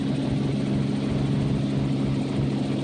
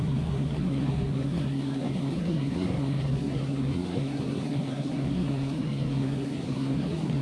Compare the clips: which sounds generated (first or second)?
second